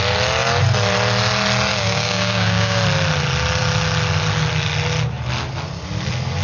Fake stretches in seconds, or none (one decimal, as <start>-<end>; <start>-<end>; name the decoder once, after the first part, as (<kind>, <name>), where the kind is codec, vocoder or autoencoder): 1.7-2.8 (codec, DAC)